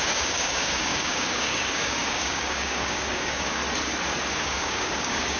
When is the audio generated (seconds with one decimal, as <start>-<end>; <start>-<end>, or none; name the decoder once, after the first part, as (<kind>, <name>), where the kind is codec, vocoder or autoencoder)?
0.0-3.6 (codec, DAC); 4.3-5.4